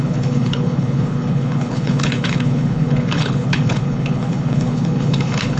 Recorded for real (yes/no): no